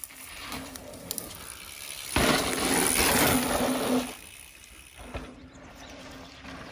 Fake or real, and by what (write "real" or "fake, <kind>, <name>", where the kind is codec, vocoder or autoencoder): real